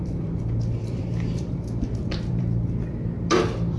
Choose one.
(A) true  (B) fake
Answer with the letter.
B